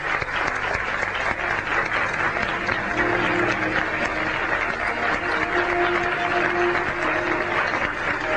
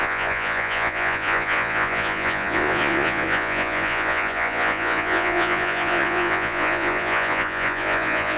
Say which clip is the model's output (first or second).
second